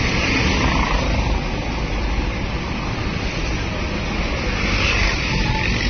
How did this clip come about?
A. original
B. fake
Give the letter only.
A